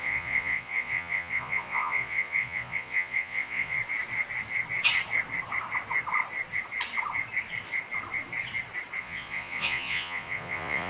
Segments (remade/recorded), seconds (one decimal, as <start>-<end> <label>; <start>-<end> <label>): 0.0-3.8 remade; 3.8-9.0 recorded; 9.0-10.9 remade